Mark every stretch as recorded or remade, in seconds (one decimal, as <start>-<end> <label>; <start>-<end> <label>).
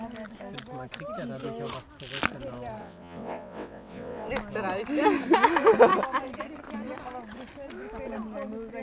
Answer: 0.0-2.8 recorded; 2.8-4.3 remade; 4.3-8.8 recorded